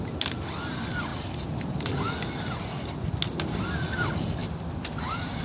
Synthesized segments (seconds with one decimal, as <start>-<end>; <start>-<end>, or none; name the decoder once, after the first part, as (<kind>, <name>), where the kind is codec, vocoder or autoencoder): 4.4-5.4 (vocoder, BigVGAN v2)